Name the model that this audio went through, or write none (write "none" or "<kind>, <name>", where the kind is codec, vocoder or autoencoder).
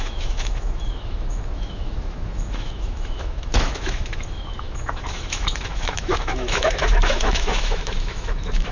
autoencoder, DAC-VAE